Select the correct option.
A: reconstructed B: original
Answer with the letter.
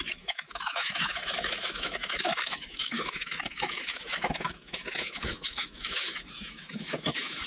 A